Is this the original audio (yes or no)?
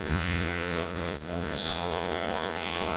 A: no